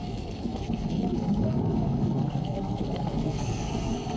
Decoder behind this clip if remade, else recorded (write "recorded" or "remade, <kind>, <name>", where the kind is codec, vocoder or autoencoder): remade, codec, SNAC